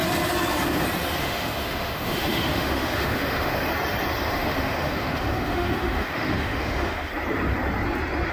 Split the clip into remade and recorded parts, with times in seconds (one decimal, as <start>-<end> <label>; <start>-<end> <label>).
0.0-1.2 recorded; 1.2-3.7 remade; 3.7-4.2 recorded; 4.2-7.1 remade; 7.1-8.3 recorded